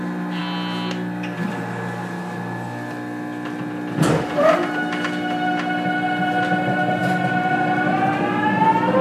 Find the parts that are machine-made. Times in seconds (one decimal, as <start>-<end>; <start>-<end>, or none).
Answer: none